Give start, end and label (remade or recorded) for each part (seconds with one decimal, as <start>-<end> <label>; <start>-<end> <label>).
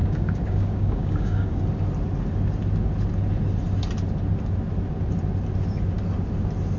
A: 0.0-1.6 remade; 1.6-6.8 recorded